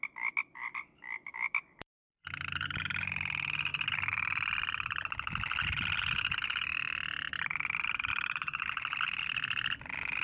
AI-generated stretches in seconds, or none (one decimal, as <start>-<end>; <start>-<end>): 1.3-2.8; 8.1-9.2